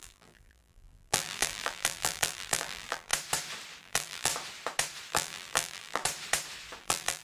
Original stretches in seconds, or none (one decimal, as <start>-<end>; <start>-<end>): 3.1-3.8; 4.3-5.1; 6.0-6.8